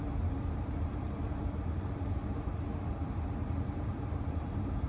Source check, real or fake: fake